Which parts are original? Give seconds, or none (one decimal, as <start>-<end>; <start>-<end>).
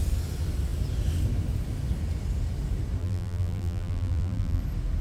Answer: 0.0-3.0; 4.6-5.0